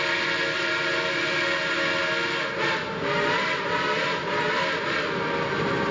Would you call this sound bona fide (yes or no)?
yes